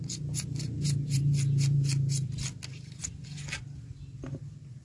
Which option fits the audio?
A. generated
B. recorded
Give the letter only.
B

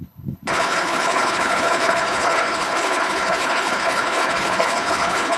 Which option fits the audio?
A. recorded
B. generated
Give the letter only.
B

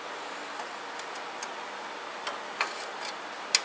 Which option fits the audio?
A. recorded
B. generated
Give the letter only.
A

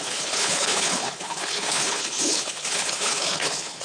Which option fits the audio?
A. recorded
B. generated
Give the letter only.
B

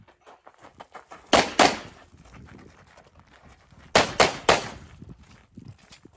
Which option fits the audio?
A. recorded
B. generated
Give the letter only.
A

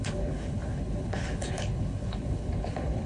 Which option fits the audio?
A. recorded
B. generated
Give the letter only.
B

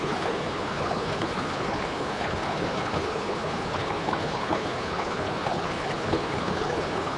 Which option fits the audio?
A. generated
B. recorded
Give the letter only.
A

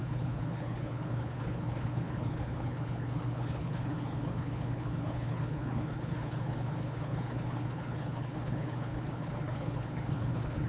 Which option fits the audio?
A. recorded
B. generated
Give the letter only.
B